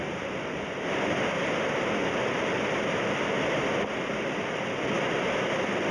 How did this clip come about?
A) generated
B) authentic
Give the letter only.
B